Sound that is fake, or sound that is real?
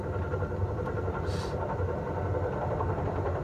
real